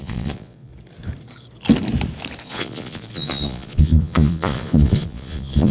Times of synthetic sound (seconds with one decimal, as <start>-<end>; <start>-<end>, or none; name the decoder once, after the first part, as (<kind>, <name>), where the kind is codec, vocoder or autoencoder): 0.0-0.7 (vocoder, Vocos); 2.4-5.7